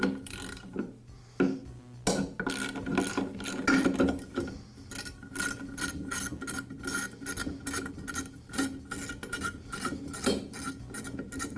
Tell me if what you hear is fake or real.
real